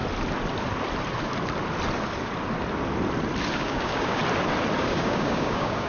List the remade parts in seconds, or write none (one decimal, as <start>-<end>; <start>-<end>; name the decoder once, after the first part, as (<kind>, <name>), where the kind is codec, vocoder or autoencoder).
3.5-4.2 (codec, DAC); 4.8-5.9